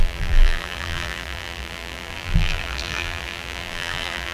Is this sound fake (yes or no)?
yes